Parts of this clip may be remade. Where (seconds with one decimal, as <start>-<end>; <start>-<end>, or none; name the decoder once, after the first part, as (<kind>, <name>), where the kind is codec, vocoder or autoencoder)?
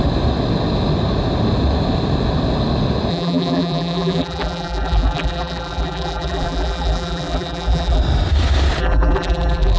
3.1-8.0 (vocoder, BigVGAN v2); 8.8-9.8